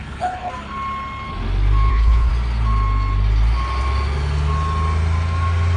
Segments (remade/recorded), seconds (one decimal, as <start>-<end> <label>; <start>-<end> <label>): 0.0-0.5 remade; 0.5-1.9 recorded; 1.9-2.3 remade; 2.3-5.8 recorded